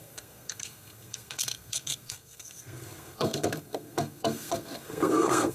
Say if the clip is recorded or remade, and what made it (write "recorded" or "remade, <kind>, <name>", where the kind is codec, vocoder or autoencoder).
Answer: remade, codec, SNAC